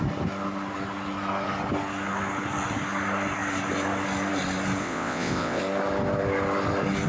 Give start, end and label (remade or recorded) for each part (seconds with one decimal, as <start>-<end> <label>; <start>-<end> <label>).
0.0-4.8 recorded; 4.8-5.6 remade; 5.6-7.1 recorded